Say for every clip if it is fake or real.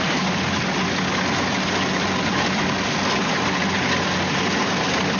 real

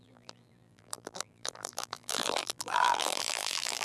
fake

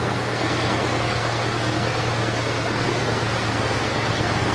fake